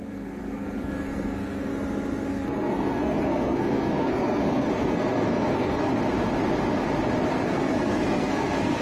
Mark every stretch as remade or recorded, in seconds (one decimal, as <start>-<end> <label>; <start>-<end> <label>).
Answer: 0.0-1.7 remade; 1.7-2.3 recorded; 2.3-5.9 remade; 5.9-7.3 recorded; 7.3-8.8 remade